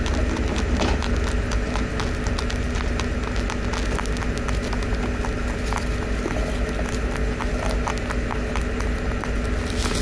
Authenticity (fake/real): real